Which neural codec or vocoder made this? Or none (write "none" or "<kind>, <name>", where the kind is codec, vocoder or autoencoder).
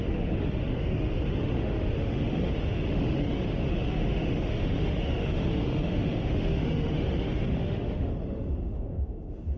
autoencoder, DAC-VAE